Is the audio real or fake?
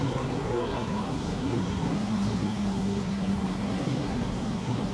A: fake